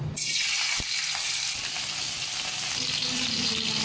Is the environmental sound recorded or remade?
recorded